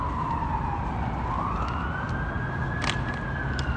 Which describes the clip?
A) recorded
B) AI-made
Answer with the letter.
A